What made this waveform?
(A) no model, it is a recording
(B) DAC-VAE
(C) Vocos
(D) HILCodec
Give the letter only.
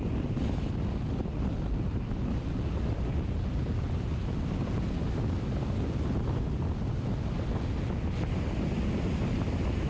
A